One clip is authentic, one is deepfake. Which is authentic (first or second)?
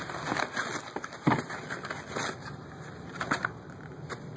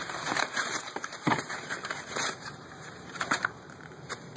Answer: first